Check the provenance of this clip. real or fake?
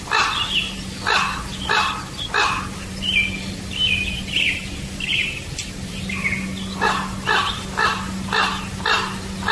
real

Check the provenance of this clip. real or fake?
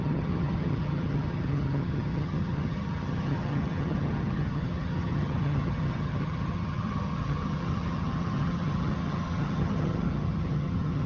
fake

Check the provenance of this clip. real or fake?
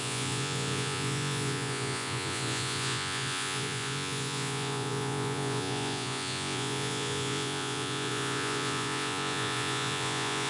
fake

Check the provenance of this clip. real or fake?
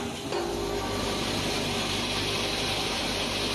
real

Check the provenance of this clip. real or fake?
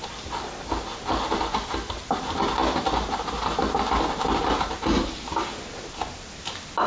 real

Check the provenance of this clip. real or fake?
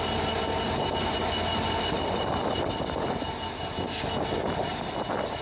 real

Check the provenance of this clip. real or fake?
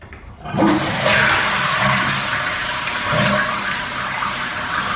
fake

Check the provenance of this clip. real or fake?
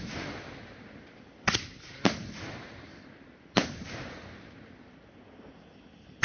real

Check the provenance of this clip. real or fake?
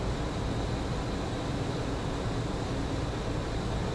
real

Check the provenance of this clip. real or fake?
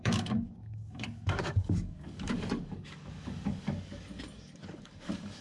fake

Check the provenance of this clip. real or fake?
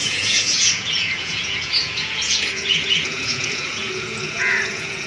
fake